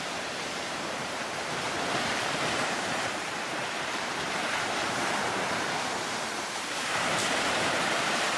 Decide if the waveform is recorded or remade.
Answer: remade